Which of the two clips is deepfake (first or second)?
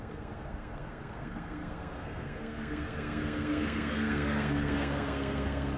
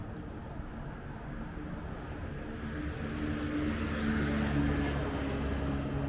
first